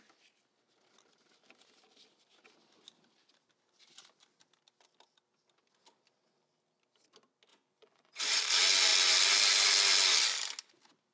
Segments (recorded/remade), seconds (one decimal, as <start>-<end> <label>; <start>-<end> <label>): 0.0-7.5 recorded; 7.5-8.4 remade; 8.4-11.1 recorded